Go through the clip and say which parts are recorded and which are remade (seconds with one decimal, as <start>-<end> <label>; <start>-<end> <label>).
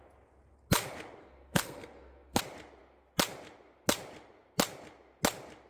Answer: 0.0-1.2 recorded; 1.2-2.4 remade; 2.4-5.7 recorded